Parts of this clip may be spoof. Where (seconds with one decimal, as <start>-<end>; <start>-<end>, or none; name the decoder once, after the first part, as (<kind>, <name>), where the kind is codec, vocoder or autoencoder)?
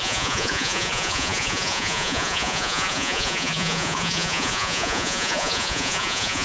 0.0-6.4 (vocoder, Vocos)